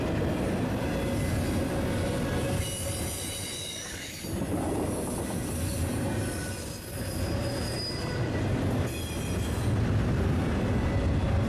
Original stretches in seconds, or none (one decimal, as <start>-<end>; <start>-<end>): 0.0-3.6; 4.1-11.5